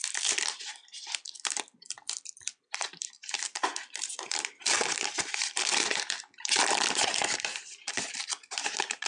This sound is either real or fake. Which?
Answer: fake